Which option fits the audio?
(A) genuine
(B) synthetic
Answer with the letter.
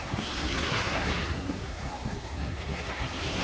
B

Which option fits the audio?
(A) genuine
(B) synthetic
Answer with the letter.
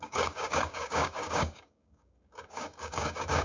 B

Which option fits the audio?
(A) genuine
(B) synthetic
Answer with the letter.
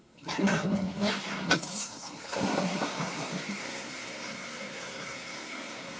B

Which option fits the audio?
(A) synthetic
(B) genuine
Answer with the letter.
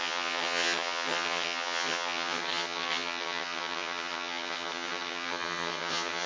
A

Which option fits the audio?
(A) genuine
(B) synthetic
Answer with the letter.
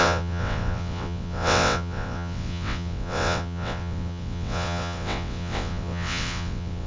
B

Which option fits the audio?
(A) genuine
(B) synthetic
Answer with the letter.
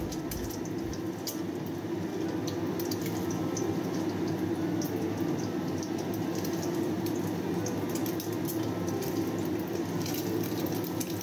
A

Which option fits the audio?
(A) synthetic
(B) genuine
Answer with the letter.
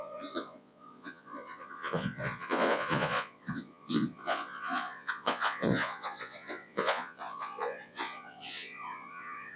A